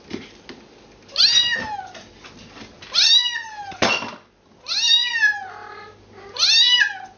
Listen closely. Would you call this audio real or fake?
real